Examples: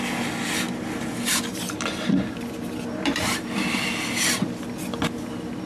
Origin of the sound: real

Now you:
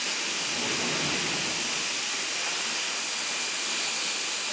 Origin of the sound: real